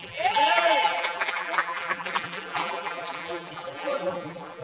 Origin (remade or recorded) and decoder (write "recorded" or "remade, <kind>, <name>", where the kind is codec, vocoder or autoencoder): remade, vocoder, BigVGAN v2